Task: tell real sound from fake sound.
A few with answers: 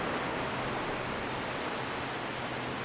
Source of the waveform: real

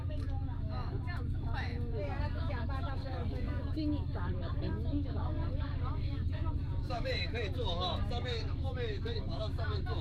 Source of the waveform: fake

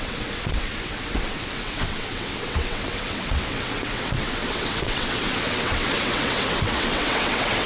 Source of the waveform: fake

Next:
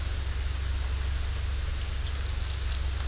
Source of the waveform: real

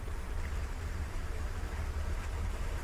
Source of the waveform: fake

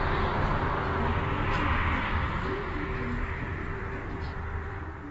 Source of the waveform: real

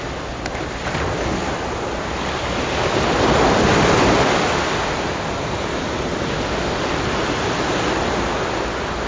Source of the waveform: real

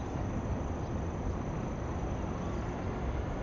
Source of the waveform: real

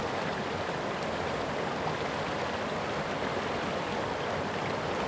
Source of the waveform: real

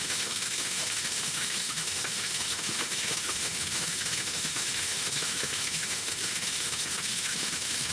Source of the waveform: fake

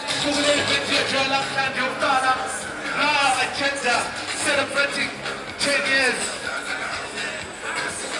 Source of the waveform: real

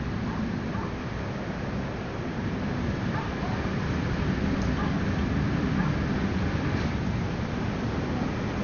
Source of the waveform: real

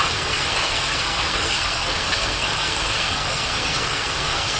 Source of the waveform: fake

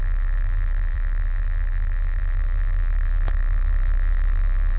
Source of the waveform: fake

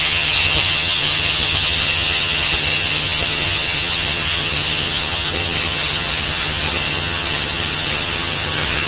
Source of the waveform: fake